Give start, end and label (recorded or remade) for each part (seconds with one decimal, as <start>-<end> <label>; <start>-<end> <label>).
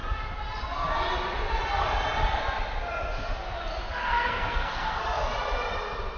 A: 0.0-4.0 recorded; 4.0-5.0 remade; 5.0-6.2 recorded